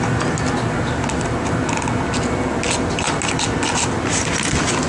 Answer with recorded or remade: recorded